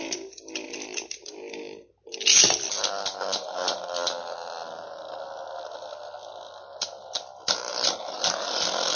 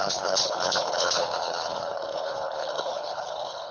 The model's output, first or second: second